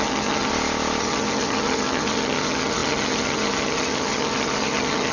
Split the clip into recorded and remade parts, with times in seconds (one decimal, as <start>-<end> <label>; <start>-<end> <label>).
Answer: 0.0-0.5 remade; 0.5-1.0 recorded; 1.0-5.1 remade